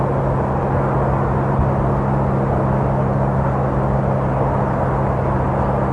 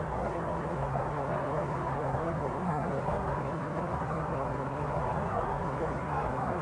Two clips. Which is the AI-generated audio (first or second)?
second